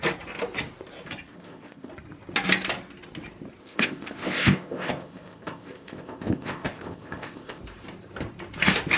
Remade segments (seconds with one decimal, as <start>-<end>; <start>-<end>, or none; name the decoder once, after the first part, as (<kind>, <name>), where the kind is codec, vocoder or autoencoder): 1.3-1.9 (codec, ZipCodec); 3.6-7.6